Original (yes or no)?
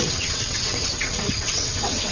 no